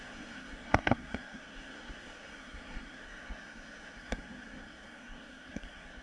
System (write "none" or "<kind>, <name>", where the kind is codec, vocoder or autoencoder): codec, SNAC